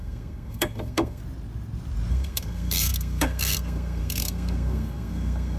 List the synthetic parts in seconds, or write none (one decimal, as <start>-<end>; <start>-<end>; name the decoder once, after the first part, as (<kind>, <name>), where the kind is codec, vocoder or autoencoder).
0.0-1.2 (codec, SNAC); 2.1-5.6